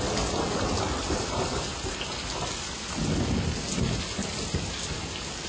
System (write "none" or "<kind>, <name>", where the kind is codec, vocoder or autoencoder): none